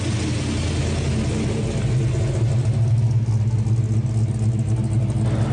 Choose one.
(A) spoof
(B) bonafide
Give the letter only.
B